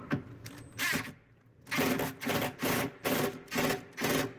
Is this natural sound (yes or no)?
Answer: yes